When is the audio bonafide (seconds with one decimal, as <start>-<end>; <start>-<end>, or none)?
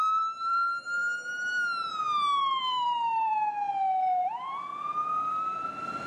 1.0-2.6; 4.7-5.3